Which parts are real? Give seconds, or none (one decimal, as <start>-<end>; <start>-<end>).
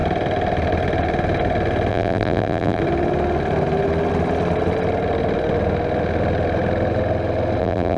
0.0-1.9; 2.8-7.6